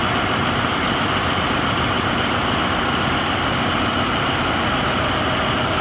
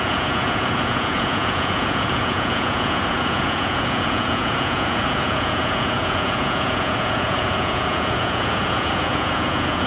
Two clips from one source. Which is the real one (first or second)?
first